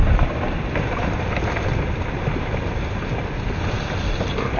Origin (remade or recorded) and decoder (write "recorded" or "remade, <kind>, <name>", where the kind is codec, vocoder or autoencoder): recorded